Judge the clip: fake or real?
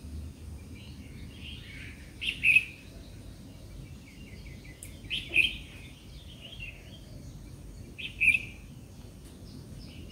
real